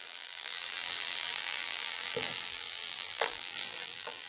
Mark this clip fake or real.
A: fake